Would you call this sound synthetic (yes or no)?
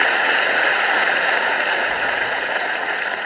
yes